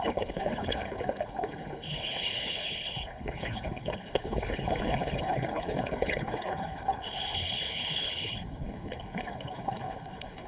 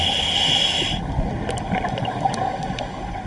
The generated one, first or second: first